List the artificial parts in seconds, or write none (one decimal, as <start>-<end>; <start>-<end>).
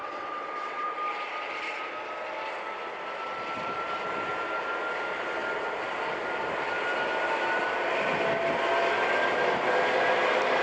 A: 0.0-0.9